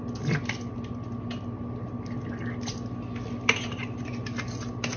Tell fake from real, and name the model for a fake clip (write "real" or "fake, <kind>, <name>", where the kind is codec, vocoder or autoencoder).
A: real